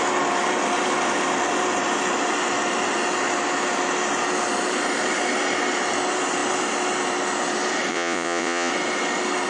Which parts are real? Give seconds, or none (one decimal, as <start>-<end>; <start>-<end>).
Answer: 0.0-7.9; 8.7-9.5